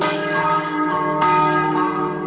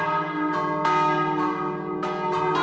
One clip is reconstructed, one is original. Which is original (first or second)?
second